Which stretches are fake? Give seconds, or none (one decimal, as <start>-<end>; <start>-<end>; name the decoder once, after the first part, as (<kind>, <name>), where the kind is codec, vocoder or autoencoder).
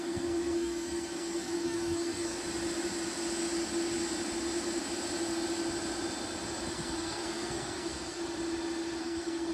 0.0-2.4 (codec, SNAC); 6.7-8.2; 9.0-9.5